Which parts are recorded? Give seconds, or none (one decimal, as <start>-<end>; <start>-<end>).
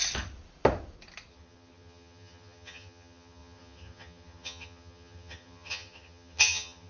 0.0-1.3